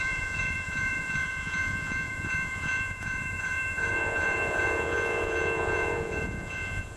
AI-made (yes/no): yes